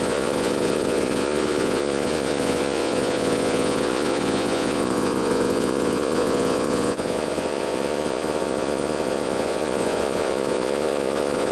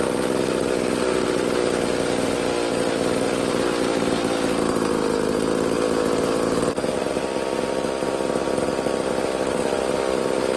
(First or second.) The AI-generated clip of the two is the first